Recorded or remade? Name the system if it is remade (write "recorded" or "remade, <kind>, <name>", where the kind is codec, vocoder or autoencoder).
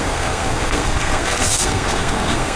remade, codec, SNAC